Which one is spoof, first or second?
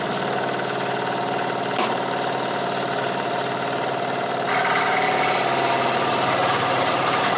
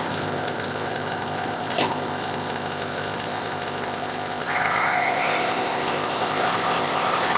second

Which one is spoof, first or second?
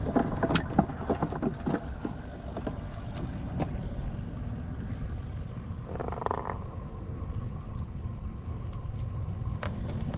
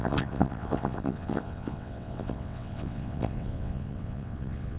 second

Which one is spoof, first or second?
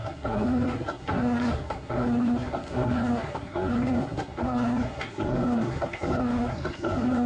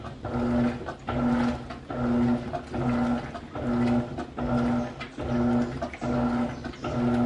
first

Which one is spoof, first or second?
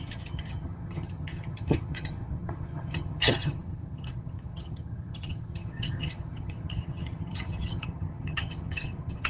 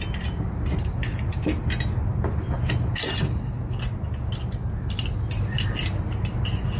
first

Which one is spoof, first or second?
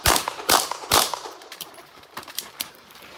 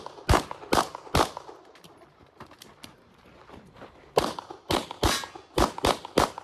first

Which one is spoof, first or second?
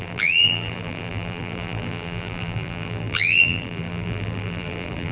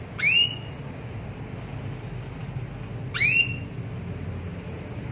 first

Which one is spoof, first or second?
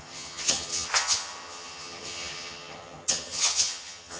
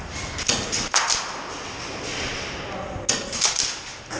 first